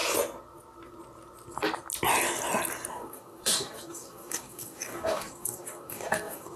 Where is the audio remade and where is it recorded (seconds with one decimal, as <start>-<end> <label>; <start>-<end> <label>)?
0.0-2.9 recorded; 2.9-6.6 remade